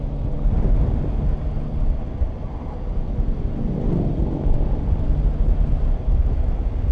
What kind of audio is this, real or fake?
real